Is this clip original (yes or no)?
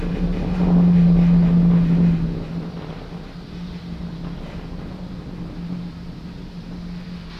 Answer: yes